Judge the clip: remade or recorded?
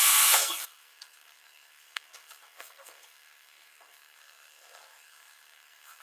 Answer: remade